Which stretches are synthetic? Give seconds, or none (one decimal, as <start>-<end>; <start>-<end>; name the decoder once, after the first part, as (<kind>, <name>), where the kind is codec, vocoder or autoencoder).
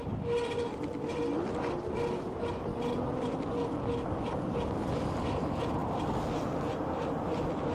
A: none